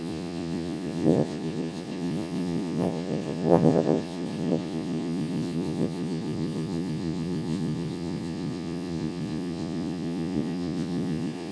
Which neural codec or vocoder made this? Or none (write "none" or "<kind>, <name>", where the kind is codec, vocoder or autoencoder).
vocoder, Vocos